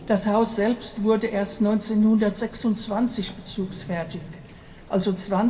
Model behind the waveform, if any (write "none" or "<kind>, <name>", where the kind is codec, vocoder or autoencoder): none